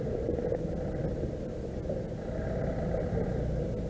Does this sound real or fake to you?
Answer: real